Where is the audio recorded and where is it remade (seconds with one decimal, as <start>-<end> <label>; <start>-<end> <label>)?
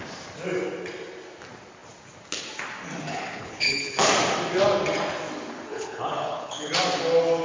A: 0.0-3.1 recorded; 3.1-4.1 remade; 4.1-5.7 recorded; 5.7-6.7 remade; 6.7-7.4 recorded